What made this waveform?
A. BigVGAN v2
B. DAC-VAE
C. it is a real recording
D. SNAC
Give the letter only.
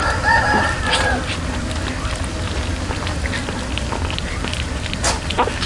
C